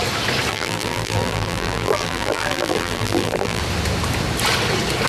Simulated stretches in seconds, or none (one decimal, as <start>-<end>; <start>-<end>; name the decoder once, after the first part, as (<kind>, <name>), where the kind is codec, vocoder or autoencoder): 0.5-3.6 (vocoder, BigVGAN v2)